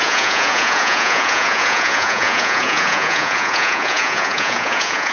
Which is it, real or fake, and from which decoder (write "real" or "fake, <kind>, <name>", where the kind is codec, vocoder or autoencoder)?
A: fake, vocoder, Vocos